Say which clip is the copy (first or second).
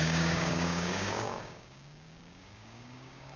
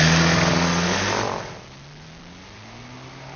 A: first